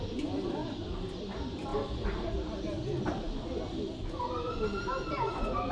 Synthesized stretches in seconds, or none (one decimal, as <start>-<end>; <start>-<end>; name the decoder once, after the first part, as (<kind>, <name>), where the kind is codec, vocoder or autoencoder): none